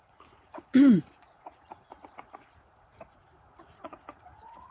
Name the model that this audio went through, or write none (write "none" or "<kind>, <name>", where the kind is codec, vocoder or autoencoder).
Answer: vocoder, Vocos